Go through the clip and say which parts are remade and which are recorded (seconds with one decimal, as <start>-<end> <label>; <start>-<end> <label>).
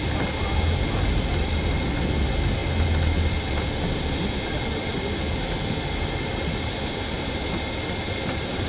0.0-8.7 recorded